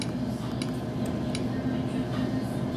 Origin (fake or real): real